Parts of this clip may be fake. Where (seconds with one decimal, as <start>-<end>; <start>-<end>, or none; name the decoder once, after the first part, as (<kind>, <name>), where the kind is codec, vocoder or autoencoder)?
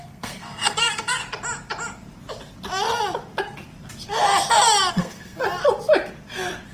0.0-1.2 (codec, SNAC); 4.9-5.4